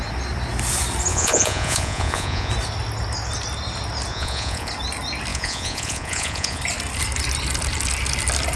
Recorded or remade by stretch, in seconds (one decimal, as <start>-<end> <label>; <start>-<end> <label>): 0.0-1.1 recorded; 1.1-2.5 remade; 2.5-4.1 recorded; 4.1-4.7 remade; 4.7-5.3 recorded; 5.3-6.6 remade; 6.6-8.6 recorded